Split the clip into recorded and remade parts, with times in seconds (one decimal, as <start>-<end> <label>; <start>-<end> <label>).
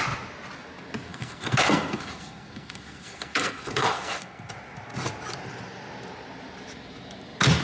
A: 0.0-1.1 recorded; 1.1-4.5 remade; 4.5-7.6 recorded